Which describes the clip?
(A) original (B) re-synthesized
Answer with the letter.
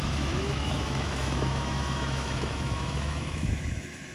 B